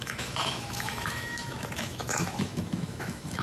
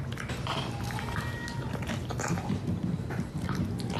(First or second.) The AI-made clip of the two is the first